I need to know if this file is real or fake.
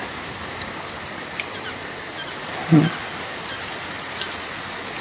real